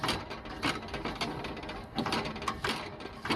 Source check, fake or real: real